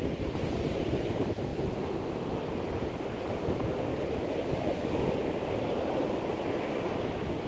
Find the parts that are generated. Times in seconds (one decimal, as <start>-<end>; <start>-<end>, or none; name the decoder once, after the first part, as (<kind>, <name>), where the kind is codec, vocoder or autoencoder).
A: none